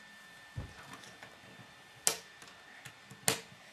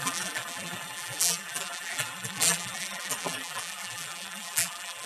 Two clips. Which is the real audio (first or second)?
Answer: first